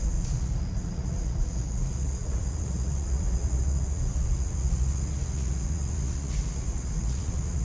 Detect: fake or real fake